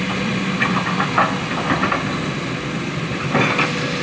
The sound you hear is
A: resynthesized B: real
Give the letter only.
B